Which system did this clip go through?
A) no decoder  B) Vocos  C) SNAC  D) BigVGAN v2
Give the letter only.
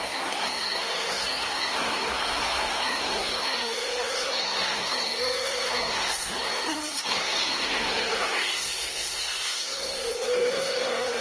C